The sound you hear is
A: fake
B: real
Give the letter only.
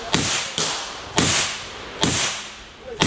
B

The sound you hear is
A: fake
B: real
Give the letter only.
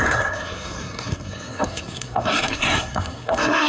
A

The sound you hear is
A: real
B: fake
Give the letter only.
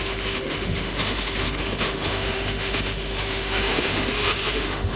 B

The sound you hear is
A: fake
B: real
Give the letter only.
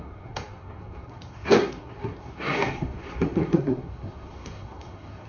A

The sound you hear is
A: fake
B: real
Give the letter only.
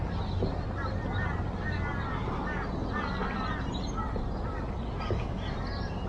B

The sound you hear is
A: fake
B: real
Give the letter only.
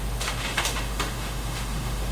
A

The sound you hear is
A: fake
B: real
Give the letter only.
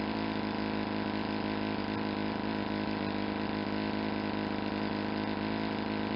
B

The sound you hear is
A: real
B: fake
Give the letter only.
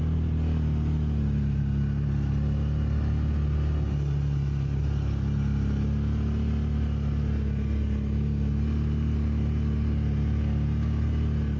A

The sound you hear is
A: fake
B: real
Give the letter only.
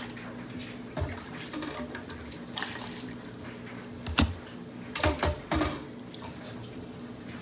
B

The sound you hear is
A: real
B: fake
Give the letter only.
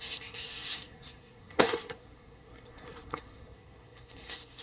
B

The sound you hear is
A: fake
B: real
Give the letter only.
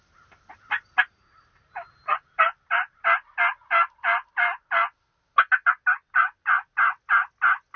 B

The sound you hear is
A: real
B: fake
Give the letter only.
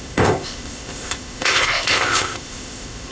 B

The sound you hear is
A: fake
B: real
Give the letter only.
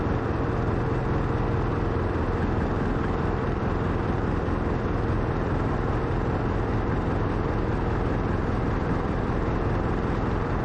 A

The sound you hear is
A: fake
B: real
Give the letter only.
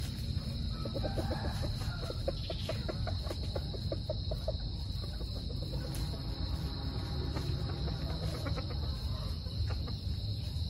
B